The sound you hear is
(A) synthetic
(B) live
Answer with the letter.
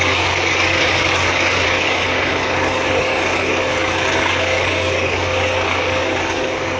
A